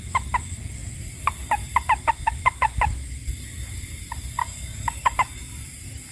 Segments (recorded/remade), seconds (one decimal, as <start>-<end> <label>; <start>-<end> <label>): 0.0-4.4 recorded; 4.4-5.4 remade; 5.4-6.1 recorded